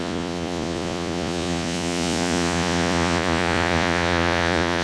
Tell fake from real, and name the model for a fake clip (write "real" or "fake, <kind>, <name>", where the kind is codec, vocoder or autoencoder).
fake, vocoder, Vocos